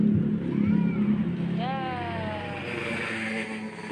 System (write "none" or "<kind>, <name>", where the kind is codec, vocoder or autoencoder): none